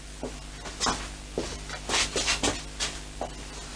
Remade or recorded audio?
recorded